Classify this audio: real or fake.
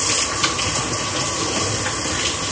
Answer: real